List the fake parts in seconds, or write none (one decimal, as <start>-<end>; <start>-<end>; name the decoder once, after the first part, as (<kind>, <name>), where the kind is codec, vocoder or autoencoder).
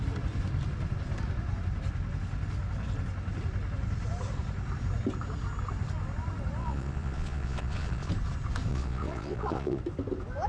6.6-8.1 (vocoder, Vocos); 8.7-9.8